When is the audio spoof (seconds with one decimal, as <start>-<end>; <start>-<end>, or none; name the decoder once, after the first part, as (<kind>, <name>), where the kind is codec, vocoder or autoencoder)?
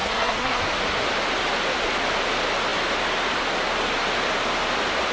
0.0-0.6 (codec, SNAC)